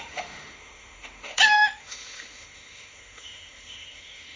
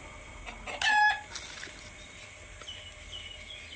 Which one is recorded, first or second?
second